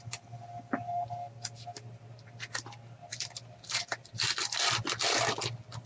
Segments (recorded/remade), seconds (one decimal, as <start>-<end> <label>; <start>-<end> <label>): 0.0-3.1 recorded; 3.1-3.8 remade; 3.8-5.9 recorded